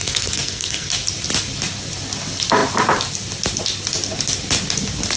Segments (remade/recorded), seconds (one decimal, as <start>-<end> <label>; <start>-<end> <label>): 0.0-0.9 remade; 0.9-5.2 recorded